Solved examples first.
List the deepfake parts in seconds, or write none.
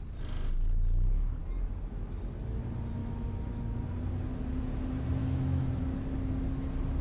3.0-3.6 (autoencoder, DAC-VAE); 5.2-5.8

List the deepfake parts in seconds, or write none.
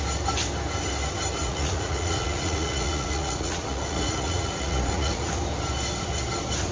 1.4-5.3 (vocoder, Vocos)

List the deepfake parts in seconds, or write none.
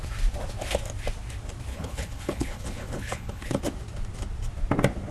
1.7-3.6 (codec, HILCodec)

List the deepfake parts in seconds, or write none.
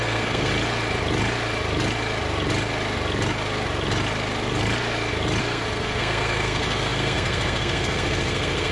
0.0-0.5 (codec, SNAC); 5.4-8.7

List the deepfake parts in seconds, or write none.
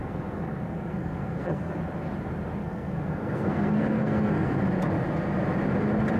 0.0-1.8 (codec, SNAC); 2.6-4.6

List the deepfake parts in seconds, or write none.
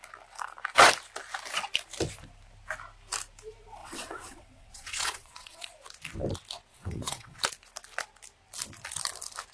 3.8-5.7 (vocoder, WaveNeXt); 6.7-7.4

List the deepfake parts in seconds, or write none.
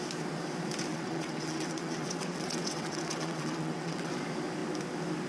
0.9-4.1 (vocoder, WaveNeXt)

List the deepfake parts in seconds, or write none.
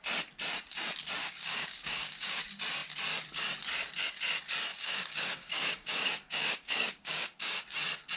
1.2-2.4 (codec, DAC); 4.7-7.6